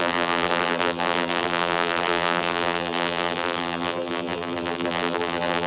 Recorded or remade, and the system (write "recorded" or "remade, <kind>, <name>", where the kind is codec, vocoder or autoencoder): remade, vocoder, BigVGAN v2